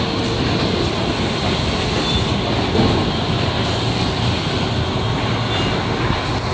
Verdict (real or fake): real